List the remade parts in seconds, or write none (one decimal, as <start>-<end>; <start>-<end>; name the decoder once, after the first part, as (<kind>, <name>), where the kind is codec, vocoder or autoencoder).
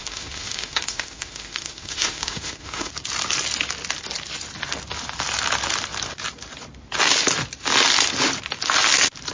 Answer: 0.0-2.9 (autoencoder, DAC-VAE)